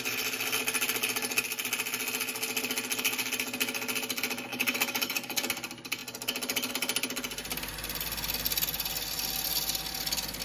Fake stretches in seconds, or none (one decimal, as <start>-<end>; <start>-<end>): 4.5-5.5